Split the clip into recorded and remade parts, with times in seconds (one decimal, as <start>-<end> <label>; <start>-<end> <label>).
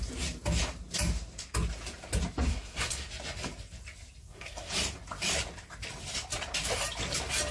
0.0-2.5 recorded; 2.5-3.1 remade; 3.1-4.2 recorded; 4.2-4.7 remade; 4.7-7.5 recorded